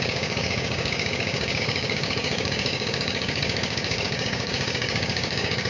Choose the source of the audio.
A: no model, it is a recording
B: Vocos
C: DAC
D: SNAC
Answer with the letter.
C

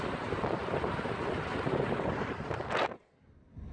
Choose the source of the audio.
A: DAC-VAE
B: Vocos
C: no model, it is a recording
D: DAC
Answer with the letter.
C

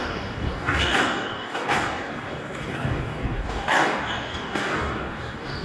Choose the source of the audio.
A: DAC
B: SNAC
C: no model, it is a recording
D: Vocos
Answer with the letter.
A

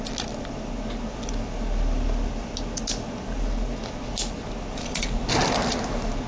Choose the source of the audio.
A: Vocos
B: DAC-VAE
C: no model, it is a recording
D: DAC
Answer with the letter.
C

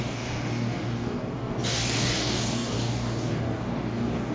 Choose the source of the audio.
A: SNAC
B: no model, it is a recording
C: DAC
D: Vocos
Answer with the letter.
C